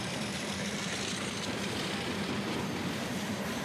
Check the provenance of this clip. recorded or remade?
remade